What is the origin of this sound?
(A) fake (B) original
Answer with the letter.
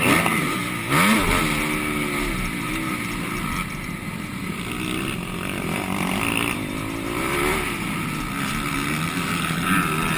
B